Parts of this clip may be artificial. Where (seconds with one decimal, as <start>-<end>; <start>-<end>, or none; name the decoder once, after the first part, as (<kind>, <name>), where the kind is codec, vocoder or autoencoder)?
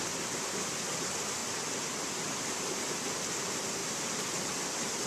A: none